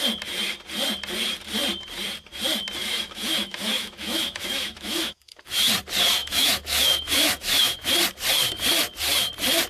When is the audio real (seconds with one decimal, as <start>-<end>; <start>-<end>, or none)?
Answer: 0.0-2.8; 5.7-6.2; 7.9-9.7

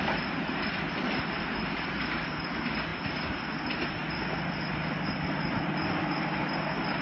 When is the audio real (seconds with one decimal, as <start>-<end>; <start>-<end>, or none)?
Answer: 0.0-7.0

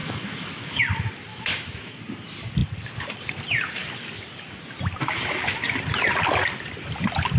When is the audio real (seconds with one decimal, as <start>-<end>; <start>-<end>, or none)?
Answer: 0.8-1.3; 2.0-7.4